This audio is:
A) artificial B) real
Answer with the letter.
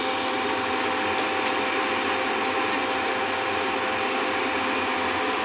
B